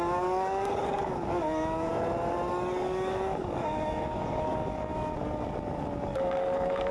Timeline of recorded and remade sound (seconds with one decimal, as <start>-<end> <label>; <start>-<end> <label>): 0.0-1.9 remade; 1.9-2.5 recorded; 2.5-5.1 remade; 5.1-6.0 recorded; 6.0-6.9 remade